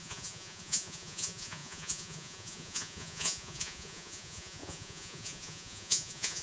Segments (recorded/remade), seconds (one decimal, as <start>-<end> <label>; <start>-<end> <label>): 0.0-6.4 remade